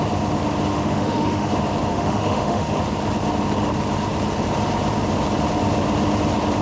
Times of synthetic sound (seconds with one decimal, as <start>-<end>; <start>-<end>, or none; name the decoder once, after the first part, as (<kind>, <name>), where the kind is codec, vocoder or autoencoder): 0.7-1.5 (autoencoder, DAC-VAE); 1.9-2.8